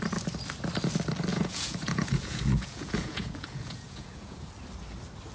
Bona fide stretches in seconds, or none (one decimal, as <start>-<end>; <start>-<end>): 0.0-1.3; 4.5-5.3